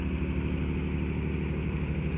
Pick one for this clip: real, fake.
real